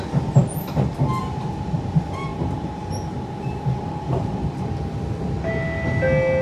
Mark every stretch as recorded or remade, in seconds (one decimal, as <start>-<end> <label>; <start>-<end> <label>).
0.0-6.4 recorded